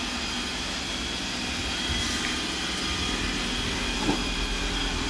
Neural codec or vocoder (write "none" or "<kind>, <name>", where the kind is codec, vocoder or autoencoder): none